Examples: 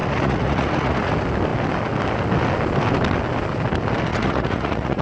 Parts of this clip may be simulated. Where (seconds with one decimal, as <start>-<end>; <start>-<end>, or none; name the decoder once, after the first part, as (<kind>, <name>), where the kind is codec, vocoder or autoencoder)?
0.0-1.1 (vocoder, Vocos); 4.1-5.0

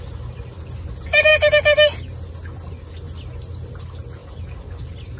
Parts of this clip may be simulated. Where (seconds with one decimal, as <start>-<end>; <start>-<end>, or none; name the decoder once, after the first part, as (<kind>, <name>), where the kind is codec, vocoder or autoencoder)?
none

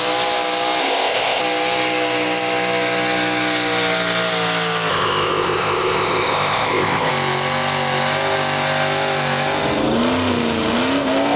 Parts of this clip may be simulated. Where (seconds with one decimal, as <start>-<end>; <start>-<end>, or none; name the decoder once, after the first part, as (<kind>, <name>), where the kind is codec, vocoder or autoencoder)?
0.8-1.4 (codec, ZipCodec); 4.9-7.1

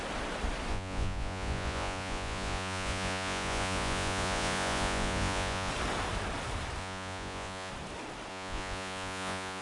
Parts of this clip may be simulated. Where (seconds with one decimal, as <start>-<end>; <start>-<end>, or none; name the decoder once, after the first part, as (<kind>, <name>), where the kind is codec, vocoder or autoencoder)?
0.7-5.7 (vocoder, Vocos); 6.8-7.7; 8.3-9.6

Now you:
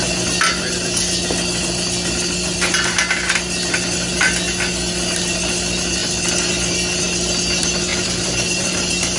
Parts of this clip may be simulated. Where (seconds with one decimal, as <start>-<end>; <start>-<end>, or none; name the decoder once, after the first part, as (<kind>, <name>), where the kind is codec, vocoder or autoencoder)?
7.9-9.2 (vocoder, BigVGAN v2)